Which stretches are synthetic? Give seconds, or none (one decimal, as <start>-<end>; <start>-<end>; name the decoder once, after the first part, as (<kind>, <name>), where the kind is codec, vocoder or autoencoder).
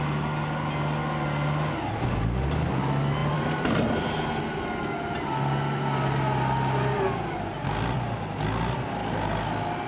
3.2-4.4 (vocoder, BigVGAN v2)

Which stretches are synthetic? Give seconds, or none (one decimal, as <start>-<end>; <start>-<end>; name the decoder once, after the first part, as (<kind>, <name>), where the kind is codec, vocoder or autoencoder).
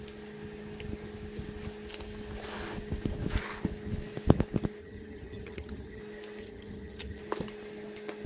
4.8-6.0 (vocoder, HiFi-GAN); 6.4-7.2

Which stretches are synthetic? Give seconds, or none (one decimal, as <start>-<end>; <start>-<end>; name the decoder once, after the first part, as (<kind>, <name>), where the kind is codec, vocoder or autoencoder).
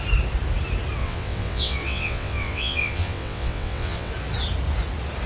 1.0-4.1 (vocoder, WaveNeXt)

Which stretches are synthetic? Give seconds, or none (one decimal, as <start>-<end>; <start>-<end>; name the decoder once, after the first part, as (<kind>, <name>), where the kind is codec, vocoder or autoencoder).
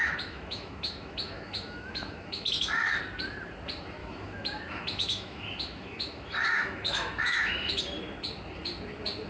0.0-3.0 (autoencoder, DAC-VAE); 4.0-7.8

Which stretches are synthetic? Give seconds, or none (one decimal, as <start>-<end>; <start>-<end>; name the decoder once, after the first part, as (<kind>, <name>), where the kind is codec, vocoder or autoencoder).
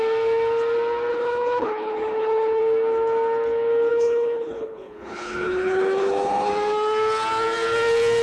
1.1-2.6 (codec, HILCodec); 3.9-6.5